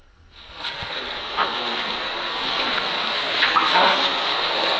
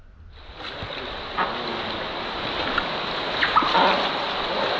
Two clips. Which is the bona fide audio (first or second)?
second